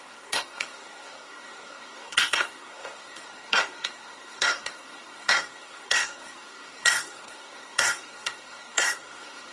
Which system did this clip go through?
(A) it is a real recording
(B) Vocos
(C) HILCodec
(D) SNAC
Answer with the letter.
D